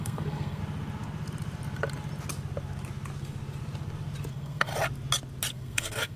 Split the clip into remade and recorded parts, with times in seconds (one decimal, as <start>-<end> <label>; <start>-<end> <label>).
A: 0.0-0.6 remade; 0.6-4.3 recorded; 4.3-4.7 remade; 4.7-5.5 recorded; 5.5-6.2 remade